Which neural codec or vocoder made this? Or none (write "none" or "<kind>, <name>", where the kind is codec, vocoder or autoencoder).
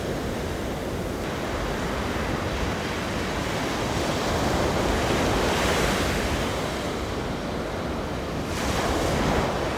none